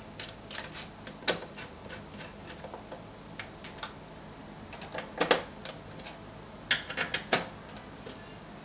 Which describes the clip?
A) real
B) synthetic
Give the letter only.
A